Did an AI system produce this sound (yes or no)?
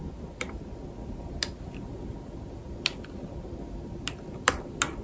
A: no